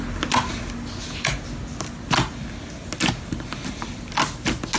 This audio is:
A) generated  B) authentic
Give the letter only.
B